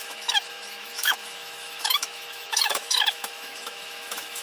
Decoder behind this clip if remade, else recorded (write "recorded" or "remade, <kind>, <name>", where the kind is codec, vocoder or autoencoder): remade, autoencoder, DAC-VAE